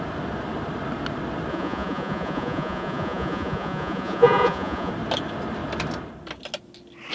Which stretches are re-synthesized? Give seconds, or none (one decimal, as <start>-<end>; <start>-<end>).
1.5-4.9